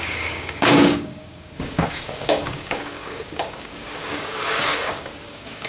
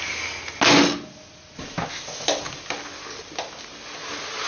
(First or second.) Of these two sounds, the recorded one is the second